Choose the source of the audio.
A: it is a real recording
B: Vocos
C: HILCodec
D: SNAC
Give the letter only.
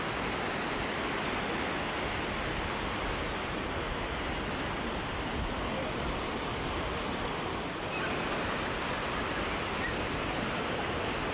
A